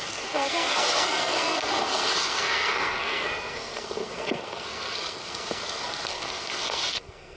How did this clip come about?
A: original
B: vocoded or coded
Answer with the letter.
B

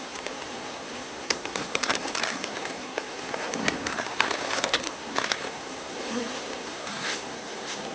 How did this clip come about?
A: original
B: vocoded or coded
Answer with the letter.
B